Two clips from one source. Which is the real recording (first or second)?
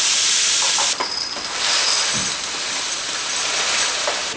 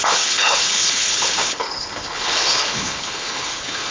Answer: first